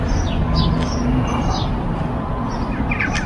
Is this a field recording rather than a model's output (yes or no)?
yes